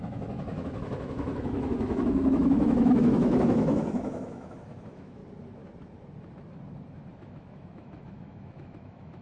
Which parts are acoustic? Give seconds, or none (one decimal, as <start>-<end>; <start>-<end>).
5.2-7.1